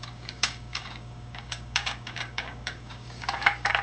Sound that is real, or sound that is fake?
fake